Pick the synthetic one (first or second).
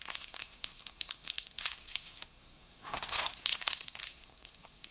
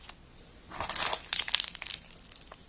first